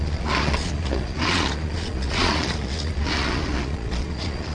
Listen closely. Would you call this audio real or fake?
fake